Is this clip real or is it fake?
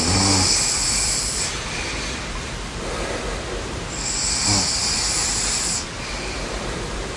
fake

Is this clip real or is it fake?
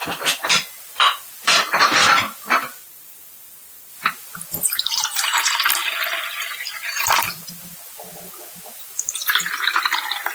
fake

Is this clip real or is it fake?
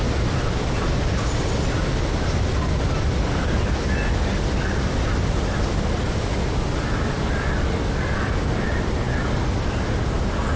real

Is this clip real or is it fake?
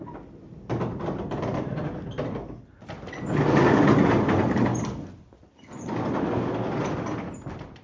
real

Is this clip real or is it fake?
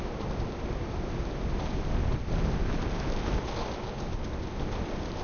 real